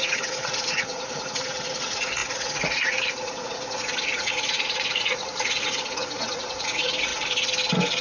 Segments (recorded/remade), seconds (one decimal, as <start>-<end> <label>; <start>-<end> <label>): 0.0-7.1 remade; 7.1-8.0 recorded